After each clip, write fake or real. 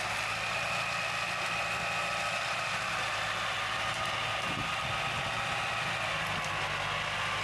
real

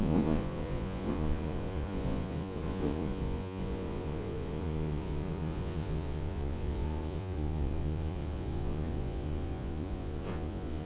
fake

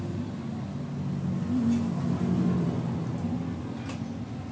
real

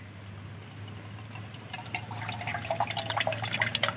real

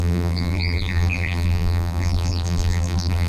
fake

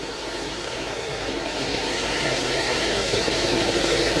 fake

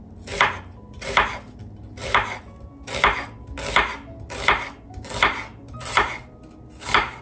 real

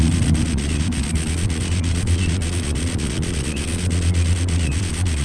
fake